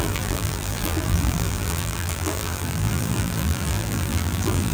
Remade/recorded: remade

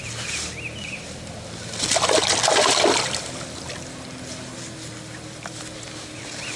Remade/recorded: recorded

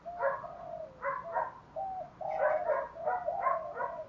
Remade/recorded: recorded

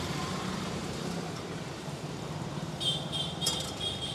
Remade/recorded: remade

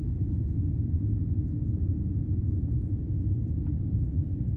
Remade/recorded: recorded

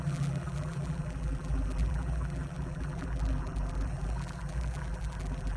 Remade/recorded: remade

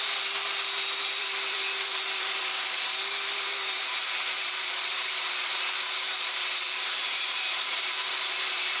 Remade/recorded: remade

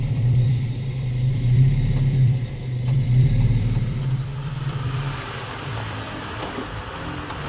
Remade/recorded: remade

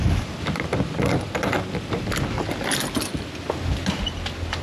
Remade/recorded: recorded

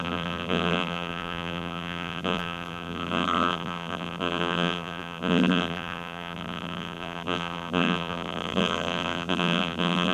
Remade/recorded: remade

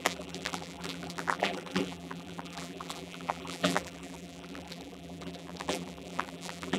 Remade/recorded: remade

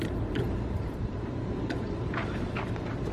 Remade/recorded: remade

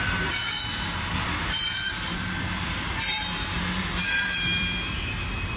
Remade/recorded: remade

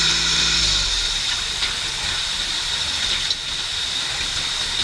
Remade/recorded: recorded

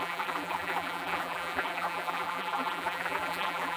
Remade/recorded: remade